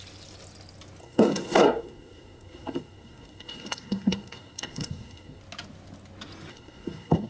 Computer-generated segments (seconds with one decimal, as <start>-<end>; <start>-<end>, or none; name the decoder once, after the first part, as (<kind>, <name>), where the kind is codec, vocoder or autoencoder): 1.0-5.4 (codec, SNAC); 6.5-7.3